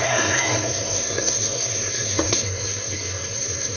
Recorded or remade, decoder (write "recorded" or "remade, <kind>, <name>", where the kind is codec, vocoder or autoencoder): remade, codec, SNAC